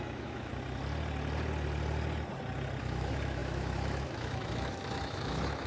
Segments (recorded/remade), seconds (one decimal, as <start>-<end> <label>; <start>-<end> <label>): 0.0-0.5 remade; 0.5-2.8 recorded; 2.8-5.7 remade